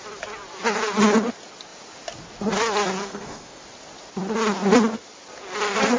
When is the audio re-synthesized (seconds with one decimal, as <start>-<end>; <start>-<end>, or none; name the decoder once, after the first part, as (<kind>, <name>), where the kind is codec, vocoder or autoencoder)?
3.0-3.6 (codec, SNAC)